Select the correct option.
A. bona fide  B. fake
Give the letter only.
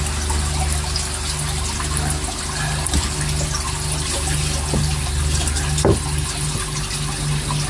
A